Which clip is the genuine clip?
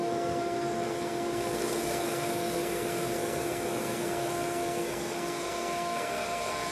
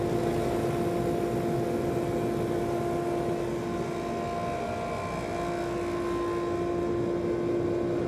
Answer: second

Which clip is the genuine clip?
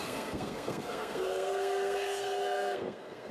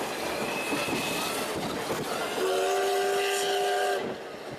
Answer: second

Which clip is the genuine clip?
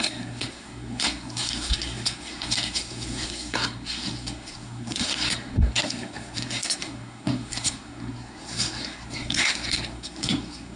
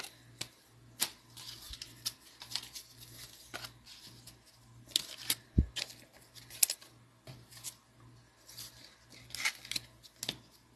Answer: second